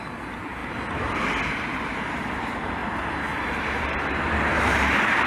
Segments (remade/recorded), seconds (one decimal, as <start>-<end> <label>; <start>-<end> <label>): 0.0-0.6 remade; 0.6-1.5 recorded; 1.5-2.8 remade; 2.8-3.4 recorded; 3.4-5.3 remade